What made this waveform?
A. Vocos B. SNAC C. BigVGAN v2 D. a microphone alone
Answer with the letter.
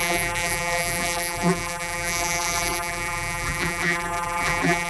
C